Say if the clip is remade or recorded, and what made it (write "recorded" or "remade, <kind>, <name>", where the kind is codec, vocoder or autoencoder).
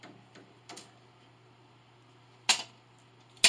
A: recorded